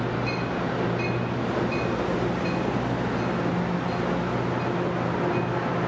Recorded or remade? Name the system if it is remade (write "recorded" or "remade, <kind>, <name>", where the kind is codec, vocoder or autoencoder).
recorded